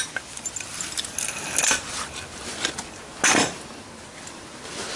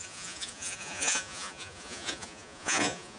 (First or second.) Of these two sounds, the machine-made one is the second